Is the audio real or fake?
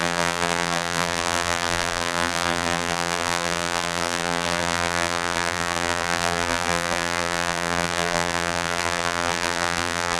fake